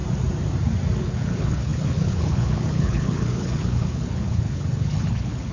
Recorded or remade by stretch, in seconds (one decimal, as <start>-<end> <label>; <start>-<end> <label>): 0.0-1.0 recorded; 1.0-5.5 remade